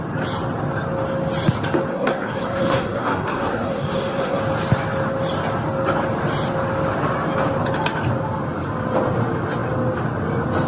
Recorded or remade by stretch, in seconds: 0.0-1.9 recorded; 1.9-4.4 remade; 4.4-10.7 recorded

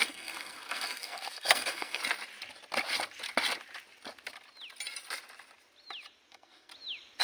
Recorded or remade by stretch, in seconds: 0.0-2.0 remade; 2.0-6.3 recorded; 6.3-6.7 remade; 6.7-7.2 recorded

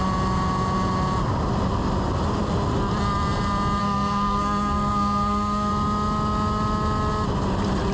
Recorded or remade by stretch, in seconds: 0.0-3.8 recorded; 3.8-5.7 remade; 5.7-7.9 recorded